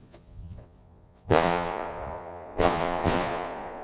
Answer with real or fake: fake